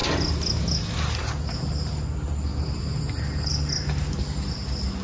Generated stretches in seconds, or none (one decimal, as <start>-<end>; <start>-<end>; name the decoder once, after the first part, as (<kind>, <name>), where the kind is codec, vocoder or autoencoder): none

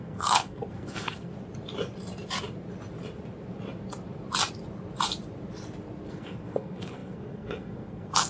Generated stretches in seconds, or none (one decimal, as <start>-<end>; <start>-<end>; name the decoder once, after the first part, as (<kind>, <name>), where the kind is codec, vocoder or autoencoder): 0.0-1.3 (codec, SNAC); 6.1-8.3

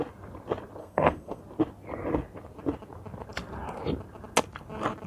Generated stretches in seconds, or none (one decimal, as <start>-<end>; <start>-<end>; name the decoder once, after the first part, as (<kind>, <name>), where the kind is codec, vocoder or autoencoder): 0.8-1.4 (codec, SNAC)

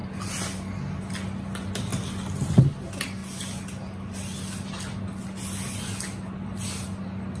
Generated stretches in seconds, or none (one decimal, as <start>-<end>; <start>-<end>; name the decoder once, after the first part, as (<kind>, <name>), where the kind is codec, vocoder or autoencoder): none

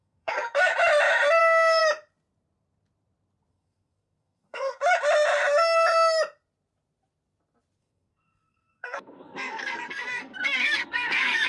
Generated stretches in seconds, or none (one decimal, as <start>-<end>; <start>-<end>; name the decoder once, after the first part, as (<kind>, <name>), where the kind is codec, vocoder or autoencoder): 0.0-0.7 (codec, SNAC); 1.4-1.8; 3.5-4.8; 7.8-11.5

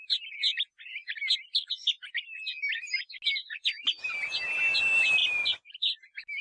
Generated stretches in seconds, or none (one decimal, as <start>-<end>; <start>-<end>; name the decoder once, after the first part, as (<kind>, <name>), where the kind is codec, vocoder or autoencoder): none

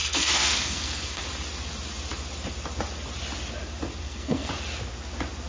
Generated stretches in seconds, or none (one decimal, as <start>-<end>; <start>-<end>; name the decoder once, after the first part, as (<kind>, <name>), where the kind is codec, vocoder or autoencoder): 0.0-1.2 (codec, SNAC); 4.0-4.5

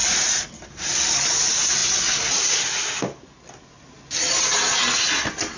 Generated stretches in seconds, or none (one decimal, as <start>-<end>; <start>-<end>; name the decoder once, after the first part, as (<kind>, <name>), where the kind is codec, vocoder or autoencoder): none